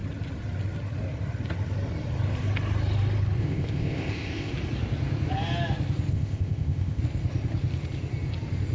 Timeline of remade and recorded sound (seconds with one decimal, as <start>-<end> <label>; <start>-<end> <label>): 0.0-3.4 recorded; 3.4-4.5 remade; 4.5-6.1 recorded; 6.1-7.0 remade; 7.0-8.7 recorded